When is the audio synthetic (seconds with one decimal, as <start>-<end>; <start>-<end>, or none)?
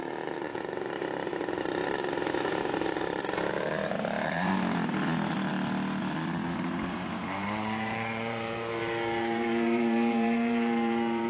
0.0-4.5; 6.6-11.3